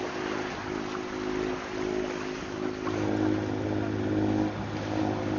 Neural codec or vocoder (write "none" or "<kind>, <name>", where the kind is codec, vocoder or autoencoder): none